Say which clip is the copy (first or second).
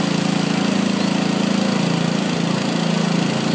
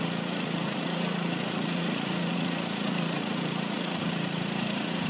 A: second